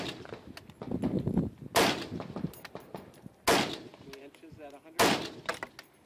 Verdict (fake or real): real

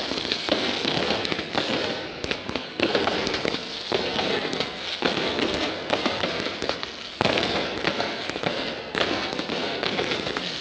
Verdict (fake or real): fake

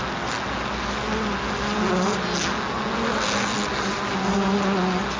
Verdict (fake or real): real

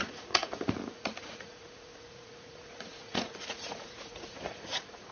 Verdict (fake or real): fake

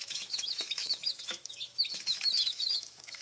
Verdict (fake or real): fake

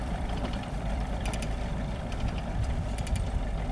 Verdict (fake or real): fake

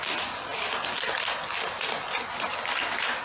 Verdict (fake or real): real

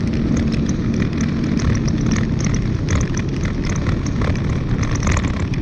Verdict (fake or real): real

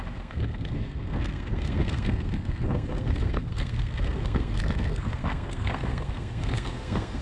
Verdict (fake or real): fake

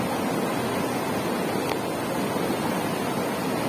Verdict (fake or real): real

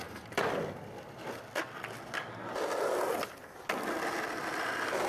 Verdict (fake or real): real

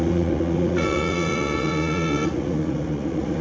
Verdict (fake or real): fake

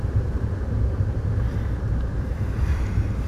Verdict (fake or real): fake